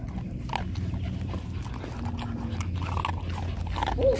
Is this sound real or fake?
real